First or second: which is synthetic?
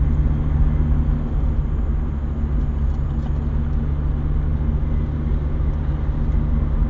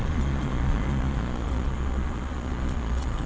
second